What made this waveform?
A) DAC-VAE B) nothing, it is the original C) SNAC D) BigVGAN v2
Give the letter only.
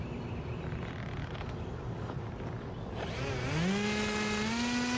B